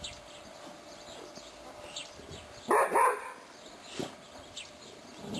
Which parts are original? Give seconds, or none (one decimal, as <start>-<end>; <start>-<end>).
0.0-5.4